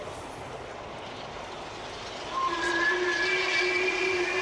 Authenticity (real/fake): real